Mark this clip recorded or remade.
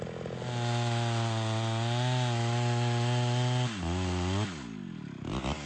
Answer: recorded